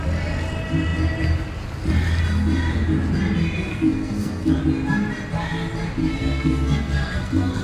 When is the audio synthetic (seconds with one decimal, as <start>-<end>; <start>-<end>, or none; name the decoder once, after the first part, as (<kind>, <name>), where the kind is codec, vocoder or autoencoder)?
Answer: 3.7-4.6 (codec, SNAC); 6.0-7.6